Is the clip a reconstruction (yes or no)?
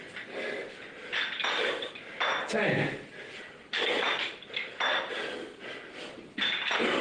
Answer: no